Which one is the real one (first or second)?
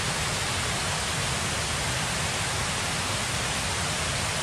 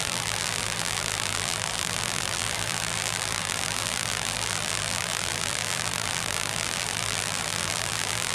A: first